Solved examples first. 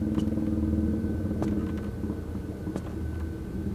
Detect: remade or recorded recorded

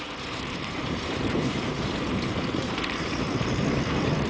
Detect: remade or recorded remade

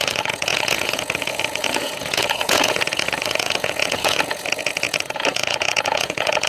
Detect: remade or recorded remade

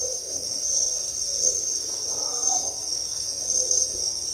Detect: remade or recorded remade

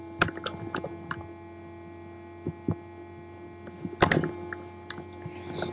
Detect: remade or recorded recorded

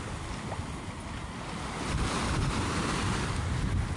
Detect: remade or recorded recorded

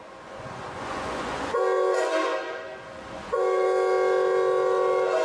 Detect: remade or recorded remade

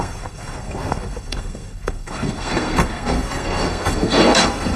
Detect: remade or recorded remade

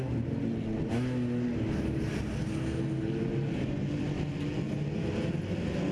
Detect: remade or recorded recorded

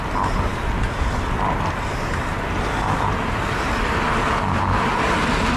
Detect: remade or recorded recorded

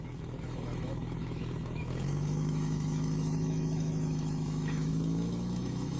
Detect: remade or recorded remade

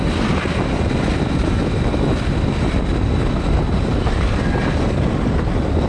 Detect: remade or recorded recorded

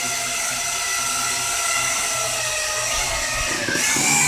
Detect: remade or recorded recorded